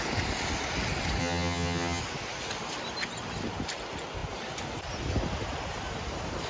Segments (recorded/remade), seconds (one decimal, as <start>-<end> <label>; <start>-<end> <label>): 0.0-1.2 recorded; 1.2-2.0 remade; 2.0-6.5 recorded